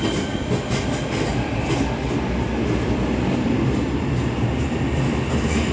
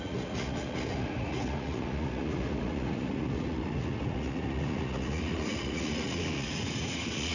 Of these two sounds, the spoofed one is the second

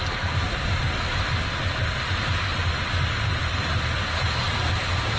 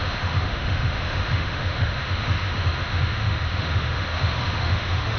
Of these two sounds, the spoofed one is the second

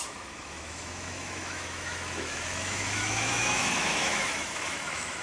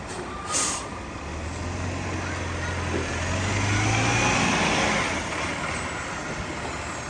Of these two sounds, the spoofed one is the first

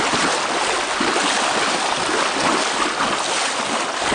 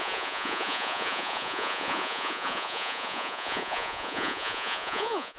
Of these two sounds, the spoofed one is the second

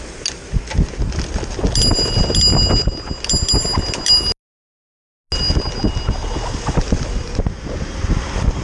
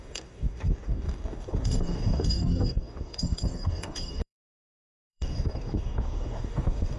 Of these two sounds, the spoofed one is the second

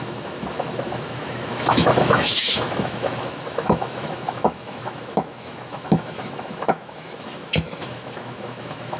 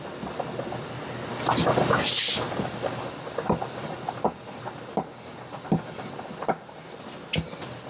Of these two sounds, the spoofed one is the first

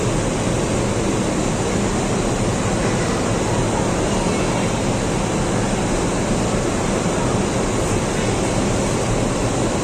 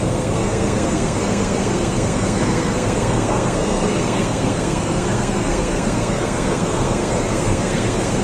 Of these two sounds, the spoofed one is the second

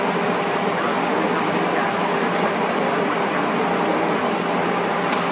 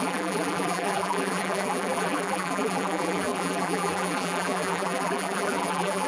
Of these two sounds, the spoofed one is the second